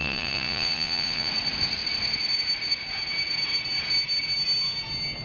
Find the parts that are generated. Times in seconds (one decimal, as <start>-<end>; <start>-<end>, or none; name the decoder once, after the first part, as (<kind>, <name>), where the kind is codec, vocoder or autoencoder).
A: 0.0-1.3 (vocoder, Vocos)